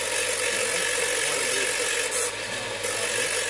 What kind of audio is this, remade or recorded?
recorded